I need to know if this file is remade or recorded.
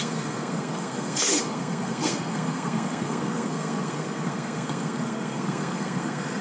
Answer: remade